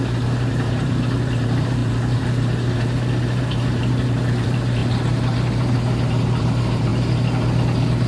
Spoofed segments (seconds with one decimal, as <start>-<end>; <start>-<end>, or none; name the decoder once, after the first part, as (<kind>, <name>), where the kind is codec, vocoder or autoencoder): 0.0-4.8 (vocoder, BigVGAN v2); 5.7-6.9